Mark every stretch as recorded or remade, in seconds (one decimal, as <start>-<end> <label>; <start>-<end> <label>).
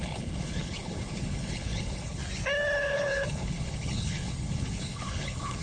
0.0-2.2 remade; 2.2-2.8 recorded; 2.8-5.6 remade